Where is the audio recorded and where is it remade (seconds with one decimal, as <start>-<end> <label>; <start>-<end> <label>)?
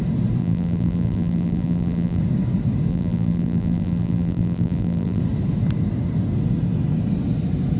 0.0-0.4 recorded; 0.4-2.2 remade; 2.2-2.9 recorded; 2.9-5.2 remade; 5.2-7.8 recorded